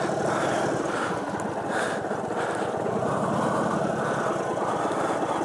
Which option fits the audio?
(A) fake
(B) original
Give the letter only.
B